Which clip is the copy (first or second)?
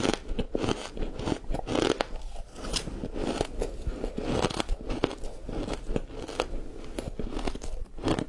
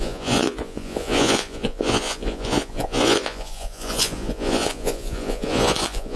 second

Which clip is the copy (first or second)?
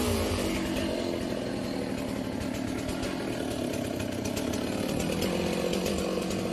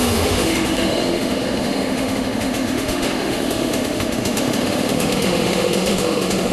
second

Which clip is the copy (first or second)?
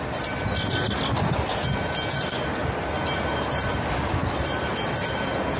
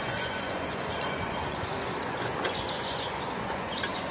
second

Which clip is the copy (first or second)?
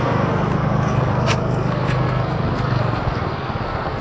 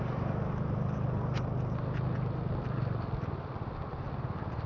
first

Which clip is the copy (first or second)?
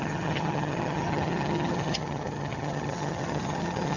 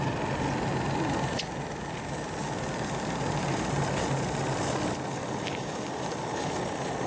first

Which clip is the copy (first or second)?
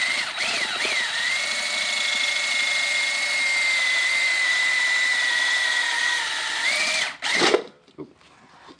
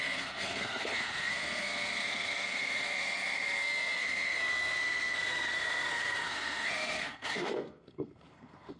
second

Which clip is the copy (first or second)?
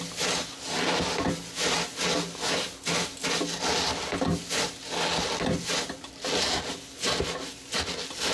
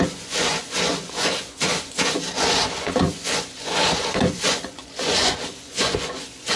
second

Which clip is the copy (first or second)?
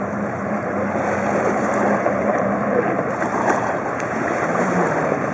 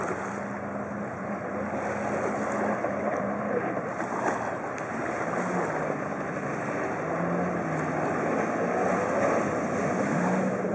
first